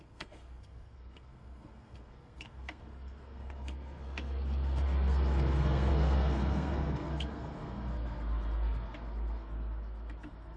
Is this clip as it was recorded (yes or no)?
no